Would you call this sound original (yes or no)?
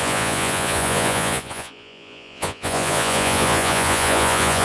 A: no